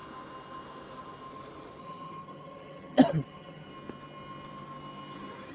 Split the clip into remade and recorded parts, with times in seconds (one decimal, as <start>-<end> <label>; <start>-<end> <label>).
0.0-1.8 recorded; 1.8-3.7 remade; 3.7-5.5 recorded